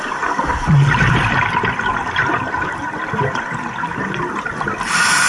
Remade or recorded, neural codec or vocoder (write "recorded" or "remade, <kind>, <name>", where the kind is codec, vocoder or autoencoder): recorded